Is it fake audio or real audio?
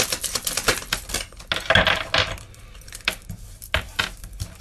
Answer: real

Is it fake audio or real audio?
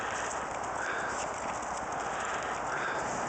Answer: real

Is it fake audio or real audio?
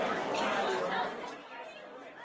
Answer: fake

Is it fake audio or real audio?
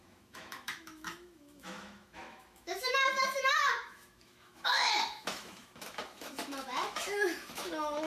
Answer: fake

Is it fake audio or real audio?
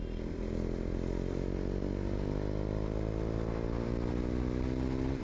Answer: real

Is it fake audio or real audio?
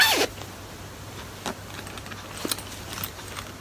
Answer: real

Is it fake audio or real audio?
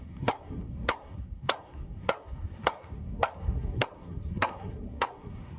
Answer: fake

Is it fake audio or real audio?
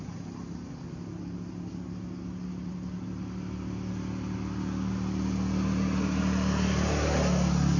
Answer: real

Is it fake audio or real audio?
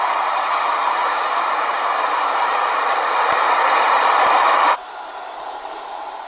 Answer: fake